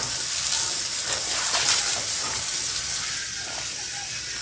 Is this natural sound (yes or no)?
yes